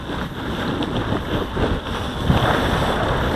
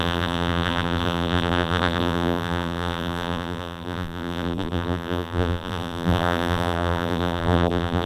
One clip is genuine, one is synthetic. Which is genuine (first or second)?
first